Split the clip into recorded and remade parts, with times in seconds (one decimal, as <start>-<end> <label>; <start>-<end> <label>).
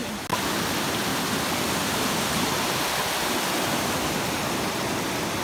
0.0-5.4 recorded